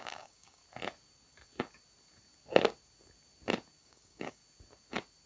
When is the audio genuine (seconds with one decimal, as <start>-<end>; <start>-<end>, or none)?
0.6-3.8; 4.4-5.3